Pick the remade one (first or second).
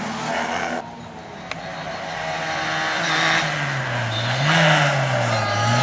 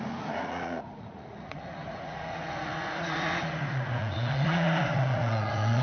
second